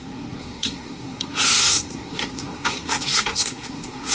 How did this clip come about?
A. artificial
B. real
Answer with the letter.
A